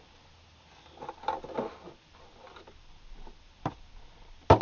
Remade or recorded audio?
recorded